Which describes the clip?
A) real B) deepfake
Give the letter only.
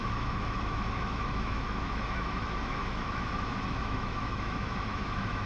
B